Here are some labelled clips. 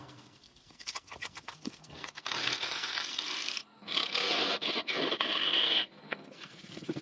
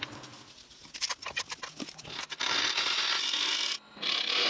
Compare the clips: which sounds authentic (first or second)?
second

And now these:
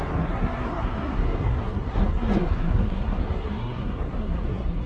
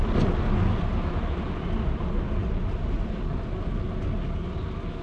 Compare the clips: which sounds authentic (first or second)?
second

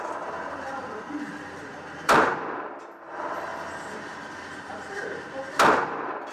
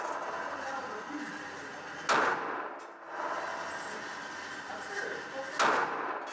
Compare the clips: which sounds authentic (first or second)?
second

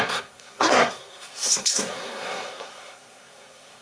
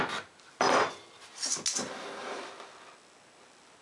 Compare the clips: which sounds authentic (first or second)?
second